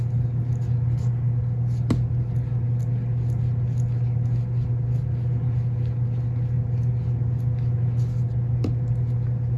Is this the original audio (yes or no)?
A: yes